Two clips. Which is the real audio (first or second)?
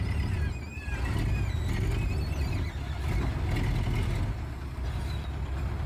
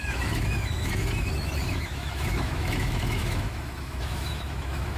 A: first